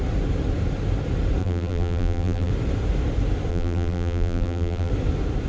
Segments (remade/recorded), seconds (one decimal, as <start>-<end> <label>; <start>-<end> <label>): 0.0-1.4 recorded; 1.4-2.5 remade; 2.5-3.5 recorded; 3.5-4.9 remade; 4.9-5.5 recorded